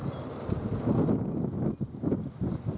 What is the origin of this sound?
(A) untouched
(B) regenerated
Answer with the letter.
A